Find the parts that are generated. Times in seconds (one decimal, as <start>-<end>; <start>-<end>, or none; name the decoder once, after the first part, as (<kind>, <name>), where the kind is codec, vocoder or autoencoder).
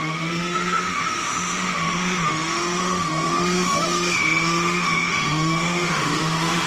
0.0-6.7 (autoencoder, DAC-VAE)